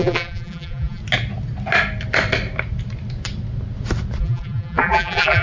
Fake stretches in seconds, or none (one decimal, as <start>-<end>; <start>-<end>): 0.0-1.0; 4.2-5.4